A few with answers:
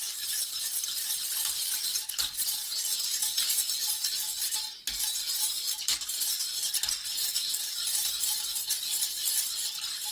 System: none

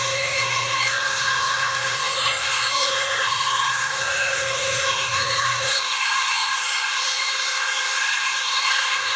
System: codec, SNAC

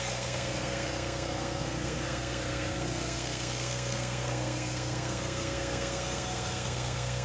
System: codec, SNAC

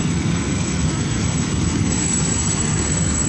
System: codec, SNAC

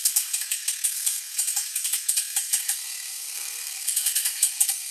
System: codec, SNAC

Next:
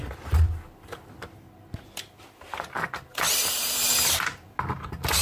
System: none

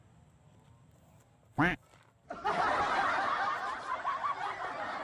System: none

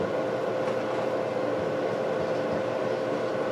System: none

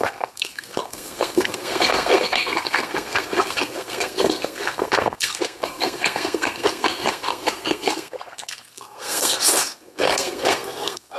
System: codec, SNAC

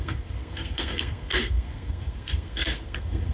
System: codec, SNAC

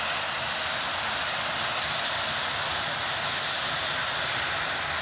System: none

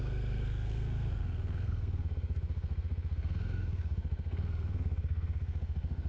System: codec, SNAC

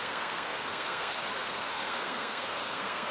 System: codec, SNAC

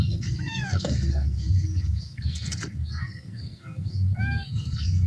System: codec, SNAC